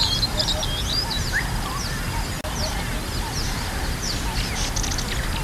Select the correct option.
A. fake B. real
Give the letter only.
B